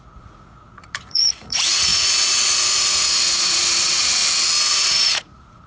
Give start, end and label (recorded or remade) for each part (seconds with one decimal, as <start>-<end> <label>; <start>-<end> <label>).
0.0-4.2 remade; 4.2-4.7 recorded; 4.7-5.7 remade